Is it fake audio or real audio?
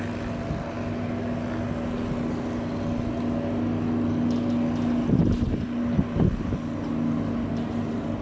real